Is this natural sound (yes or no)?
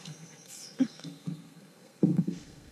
no